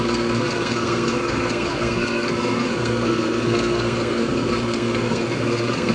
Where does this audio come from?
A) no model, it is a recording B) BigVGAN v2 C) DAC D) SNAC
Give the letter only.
D